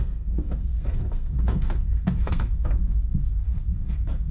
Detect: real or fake fake